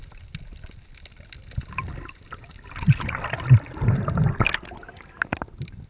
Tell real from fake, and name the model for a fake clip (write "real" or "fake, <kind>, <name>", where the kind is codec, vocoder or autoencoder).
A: real